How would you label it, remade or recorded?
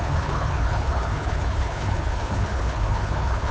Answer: remade